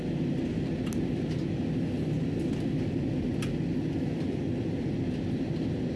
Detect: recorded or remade recorded